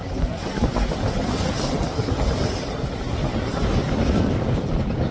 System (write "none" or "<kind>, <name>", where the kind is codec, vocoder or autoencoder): none